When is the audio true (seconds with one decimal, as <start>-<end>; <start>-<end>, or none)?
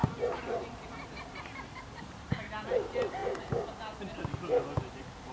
2.3-5.3